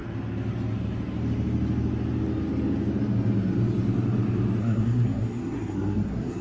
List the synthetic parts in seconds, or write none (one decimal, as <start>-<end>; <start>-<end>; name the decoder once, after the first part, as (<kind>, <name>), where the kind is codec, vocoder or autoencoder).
4.6-6.4 (codec, SNAC)